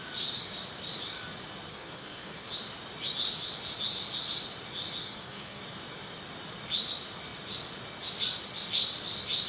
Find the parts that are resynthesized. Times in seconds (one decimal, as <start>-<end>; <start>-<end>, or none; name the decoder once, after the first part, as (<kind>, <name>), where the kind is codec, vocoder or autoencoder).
1.7-2.5 (codec, SNAC); 5.0-5.6